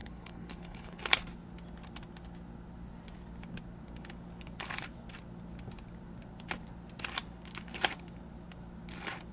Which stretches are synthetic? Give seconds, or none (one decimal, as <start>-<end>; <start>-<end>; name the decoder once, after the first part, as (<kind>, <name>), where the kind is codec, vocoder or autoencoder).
0.0-1.0 (codec, HILCodec)

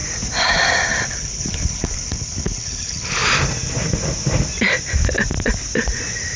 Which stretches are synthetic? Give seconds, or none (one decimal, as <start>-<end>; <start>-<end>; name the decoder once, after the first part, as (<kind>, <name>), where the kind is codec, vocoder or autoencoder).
1.1-3.2 (codec, HILCodec)

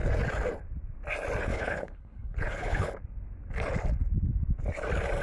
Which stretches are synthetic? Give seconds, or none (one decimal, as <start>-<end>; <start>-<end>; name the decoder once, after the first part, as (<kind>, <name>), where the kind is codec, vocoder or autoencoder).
1.5-2.9 (codec, HILCodec)

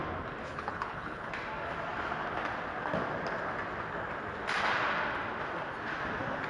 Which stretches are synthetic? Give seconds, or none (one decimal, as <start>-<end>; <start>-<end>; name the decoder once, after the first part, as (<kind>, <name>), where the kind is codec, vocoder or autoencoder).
0.4-1.3 (codec, HILCodec)

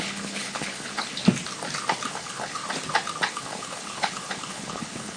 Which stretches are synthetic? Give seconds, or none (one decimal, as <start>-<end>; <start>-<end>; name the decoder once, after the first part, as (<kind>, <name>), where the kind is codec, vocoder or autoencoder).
0.0-1.2 (codec, HILCodec); 2.1-2.6; 3.3-5.2

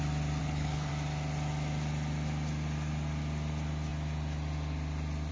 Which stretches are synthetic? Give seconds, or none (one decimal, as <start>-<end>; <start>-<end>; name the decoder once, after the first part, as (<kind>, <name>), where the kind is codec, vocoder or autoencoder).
0.4-0.9 (codec, HILCodec)

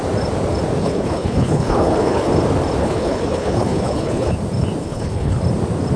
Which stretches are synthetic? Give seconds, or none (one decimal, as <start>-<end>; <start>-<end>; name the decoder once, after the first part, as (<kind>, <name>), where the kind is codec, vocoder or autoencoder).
0.8-2.3 (codec, HILCodec); 2.8-4.3; 4.8-5.4